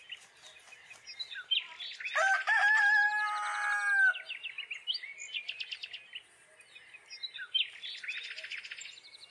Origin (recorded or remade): recorded